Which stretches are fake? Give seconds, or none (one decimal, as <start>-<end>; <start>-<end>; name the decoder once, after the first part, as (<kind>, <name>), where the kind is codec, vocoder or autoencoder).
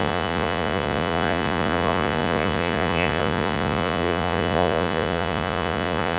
0.0-6.2 (vocoder, Vocos)